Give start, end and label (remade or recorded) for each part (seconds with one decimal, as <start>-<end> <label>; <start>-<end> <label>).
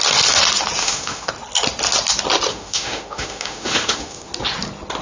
0.0-0.8 recorded; 0.8-1.3 remade; 1.3-2.5 recorded; 2.5-4.3 remade; 4.3-5.0 recorded